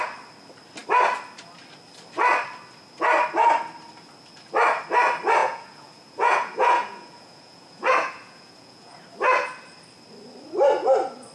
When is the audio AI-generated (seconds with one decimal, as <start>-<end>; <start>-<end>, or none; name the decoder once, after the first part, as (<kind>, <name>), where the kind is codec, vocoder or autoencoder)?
5.4-9.0 (vocoder, Vocos)